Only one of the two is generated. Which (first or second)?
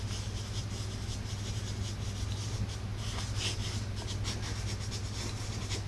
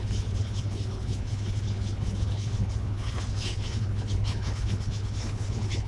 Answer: second